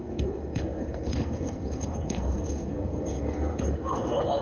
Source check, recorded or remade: remade